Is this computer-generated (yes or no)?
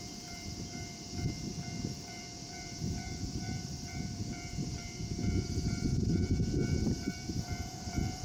yes